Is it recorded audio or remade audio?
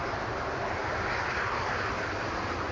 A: recorded